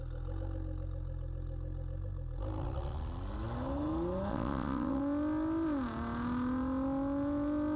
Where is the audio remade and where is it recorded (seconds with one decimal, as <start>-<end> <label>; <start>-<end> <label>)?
0.0-4.3 recorded; 4.3-5.0 remade; 5.0-7.8 recorded